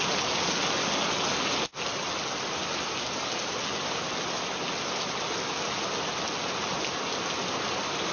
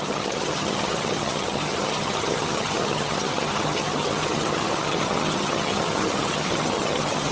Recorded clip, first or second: first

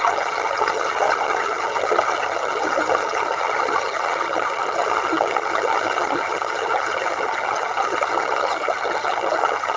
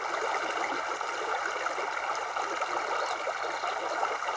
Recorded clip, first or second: second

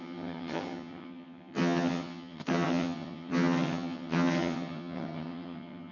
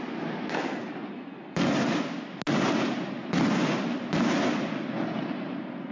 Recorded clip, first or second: second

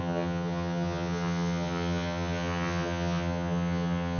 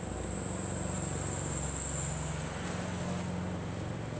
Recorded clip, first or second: second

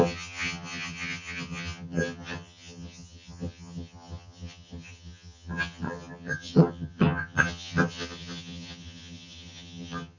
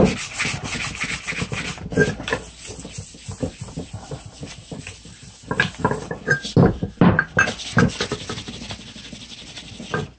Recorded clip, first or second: second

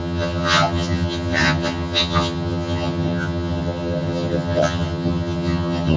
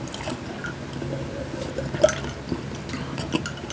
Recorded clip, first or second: second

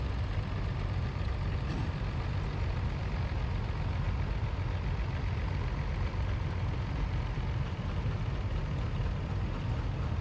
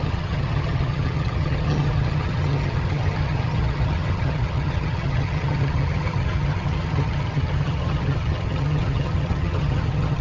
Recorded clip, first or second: first